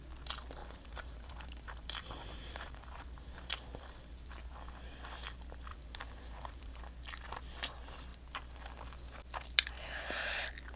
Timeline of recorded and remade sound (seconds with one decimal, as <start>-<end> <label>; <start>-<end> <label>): 0.0-0.6 recorded; 0.6-4.3 remade; 4.3-5.7 recorded; 5.7-6.8 remade; 6.8-10.8 recorded